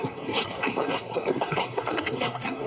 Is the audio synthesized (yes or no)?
yes